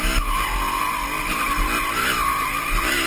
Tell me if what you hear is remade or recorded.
recorded